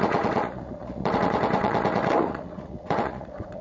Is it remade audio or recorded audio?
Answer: remade